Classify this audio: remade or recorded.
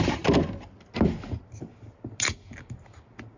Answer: recorded